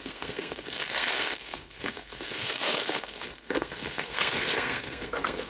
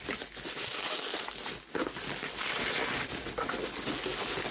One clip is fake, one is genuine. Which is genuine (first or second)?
second